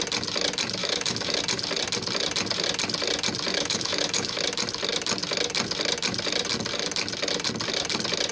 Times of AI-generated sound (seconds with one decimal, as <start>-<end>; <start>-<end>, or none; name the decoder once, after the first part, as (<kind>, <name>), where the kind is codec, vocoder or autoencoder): 0.8-1.4 (autoencoder, DAC-VAE); 3.5-4.4